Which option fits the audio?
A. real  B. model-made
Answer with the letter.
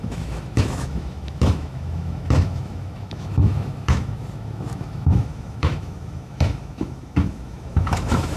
B